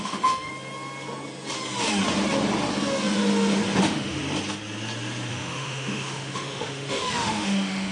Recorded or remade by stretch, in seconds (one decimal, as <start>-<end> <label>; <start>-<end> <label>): 0.0-0.5 remade; 0.5-3.8 recorded; 3.8-4.2 remade; 4.2-5.3 recorded; 5.3-7.9 remade